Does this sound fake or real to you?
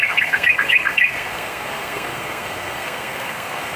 fake